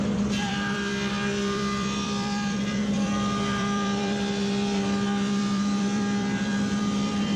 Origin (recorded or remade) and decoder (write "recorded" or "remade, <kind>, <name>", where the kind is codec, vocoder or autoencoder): remade, vocoder, BigVGAN v2